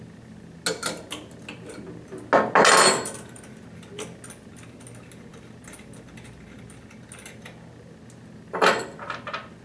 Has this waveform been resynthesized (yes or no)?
no